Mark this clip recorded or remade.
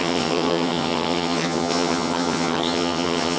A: remade